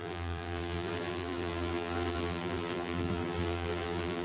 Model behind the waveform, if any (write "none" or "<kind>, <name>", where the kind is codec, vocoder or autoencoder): vocoder, BigVGAN v2